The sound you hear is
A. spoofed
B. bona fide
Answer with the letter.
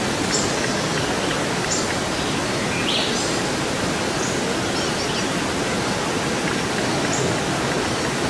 B